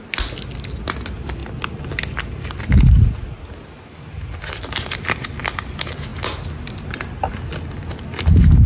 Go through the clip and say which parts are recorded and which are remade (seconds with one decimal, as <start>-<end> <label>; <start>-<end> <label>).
0.0-8.7 recorded